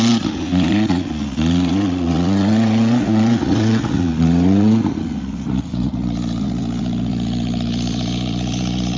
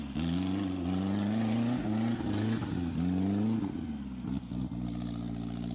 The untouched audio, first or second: second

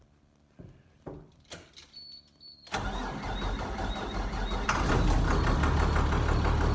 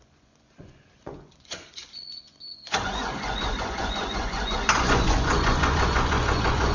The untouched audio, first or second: first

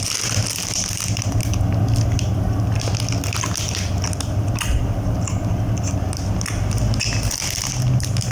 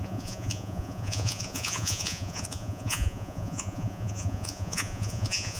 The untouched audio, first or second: first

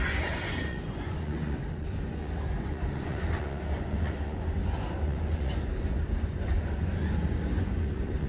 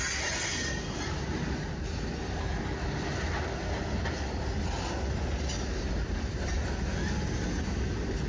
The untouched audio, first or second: second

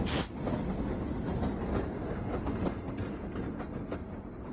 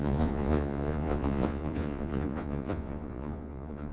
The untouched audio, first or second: first